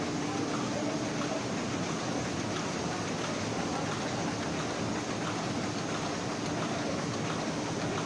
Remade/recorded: recorded